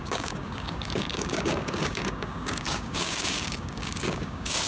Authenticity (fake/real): fake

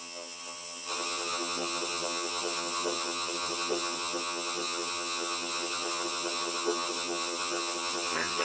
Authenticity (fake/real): fake